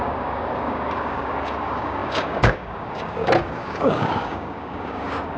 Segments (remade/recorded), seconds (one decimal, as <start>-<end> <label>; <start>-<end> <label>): 0.0-5.4 remade